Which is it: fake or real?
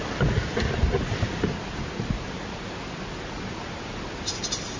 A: real